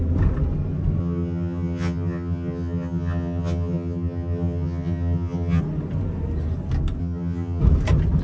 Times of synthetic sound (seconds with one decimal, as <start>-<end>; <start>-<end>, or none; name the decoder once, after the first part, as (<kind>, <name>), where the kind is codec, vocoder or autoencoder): 1.0-5.6 (vocoder, HiFi-GAN); 7.0-7.6